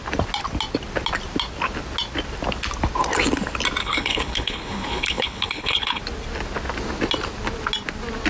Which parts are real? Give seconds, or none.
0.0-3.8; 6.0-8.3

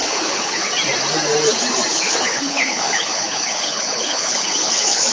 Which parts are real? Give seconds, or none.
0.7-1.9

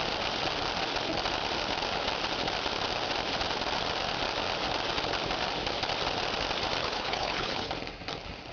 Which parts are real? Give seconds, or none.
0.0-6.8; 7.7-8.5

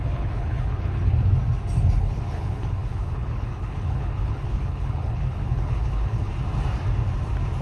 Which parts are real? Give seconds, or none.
1.2-2.0; 6.3-7.6

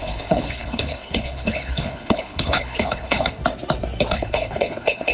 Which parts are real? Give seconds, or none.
3.4-4.1

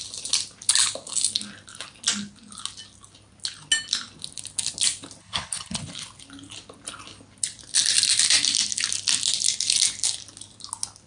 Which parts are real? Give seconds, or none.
0.0-5.2; 5.8-11.1

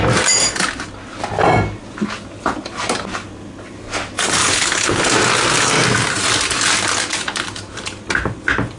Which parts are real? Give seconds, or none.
0.0-4.4; 5.0-8.8